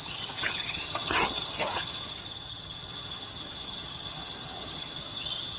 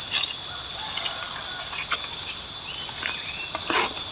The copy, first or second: first